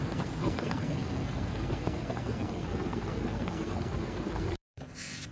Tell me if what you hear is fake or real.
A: fake